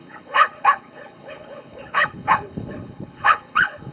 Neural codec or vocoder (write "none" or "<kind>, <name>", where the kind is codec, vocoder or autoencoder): codec, HILCodec